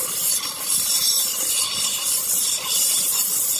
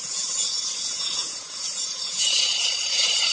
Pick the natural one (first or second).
first